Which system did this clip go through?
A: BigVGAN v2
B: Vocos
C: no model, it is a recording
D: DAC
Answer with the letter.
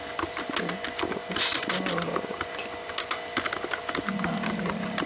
C